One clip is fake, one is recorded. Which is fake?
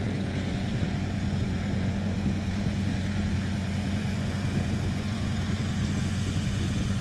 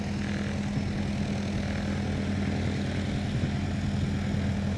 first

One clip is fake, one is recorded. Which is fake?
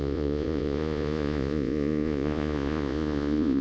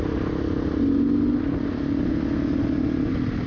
first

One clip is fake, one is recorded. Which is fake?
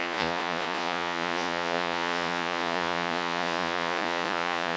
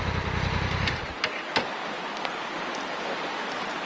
first